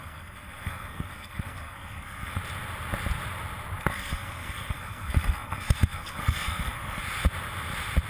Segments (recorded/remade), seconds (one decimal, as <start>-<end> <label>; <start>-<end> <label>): 0.0-2.4 remade; 2.4-3.8 recorded; 3.8-7.0 remade; 7.0-8.1 recorded